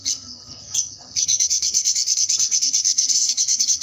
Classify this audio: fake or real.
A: fake